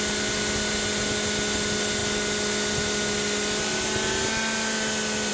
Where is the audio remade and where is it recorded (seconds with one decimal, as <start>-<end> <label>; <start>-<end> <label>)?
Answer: 0.0-5.3 recorded